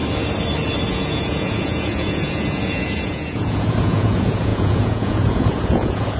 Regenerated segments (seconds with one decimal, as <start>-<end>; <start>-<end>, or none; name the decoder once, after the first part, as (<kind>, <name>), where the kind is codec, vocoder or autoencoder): 0.9-6.2 (vocoder, Vocos)